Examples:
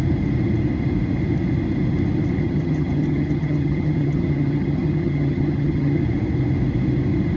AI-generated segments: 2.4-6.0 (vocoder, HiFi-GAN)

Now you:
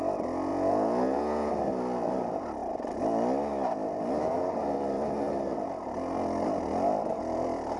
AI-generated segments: 0.5-1.5 (vocoder, Vocos)

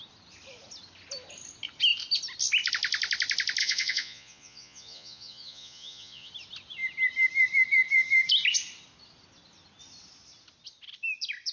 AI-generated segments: 3.6-6.3 (vocoder, Vocos)

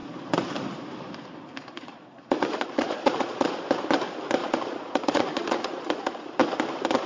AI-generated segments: 1.7-3.6 (vocoder, Vocos); 4.4-6.3